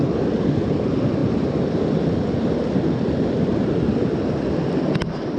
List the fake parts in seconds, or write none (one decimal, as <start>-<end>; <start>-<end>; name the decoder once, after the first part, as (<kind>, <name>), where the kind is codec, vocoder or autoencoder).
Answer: none